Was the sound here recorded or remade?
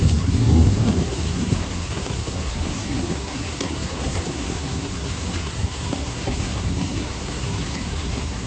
remade